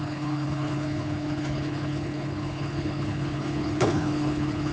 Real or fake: fake